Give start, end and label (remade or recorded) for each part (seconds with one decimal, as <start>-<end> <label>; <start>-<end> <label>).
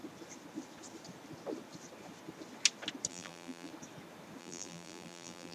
0.0-3.1 recorded; 3.1-3.7 remade; 3.7-4.4 recorded; 4.4-5.5 remade